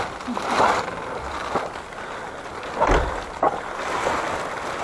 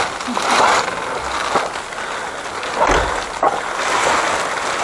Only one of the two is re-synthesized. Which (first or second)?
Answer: first